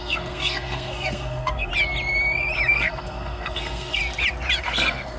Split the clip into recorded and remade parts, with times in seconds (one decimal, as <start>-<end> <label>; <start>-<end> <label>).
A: 0.0-1.7 remade; 1.7-2.7 recorded; 2.7-4.0 remade; 4.0-4.6 recorded; 4.6-5.2 remade